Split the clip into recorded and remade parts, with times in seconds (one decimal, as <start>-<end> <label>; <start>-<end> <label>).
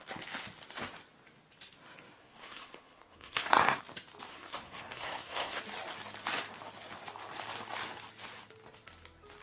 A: 0.0-2.2 recorded; 2.2-3.8 remade; 3.8-4.3 recorded; 4.3-5.6 remade; 5.6-9.4 recorded